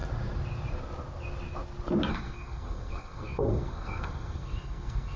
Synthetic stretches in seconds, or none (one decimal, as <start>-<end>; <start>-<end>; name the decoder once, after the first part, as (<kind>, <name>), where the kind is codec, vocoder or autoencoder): 2.1-5.2 (codec, SNAC)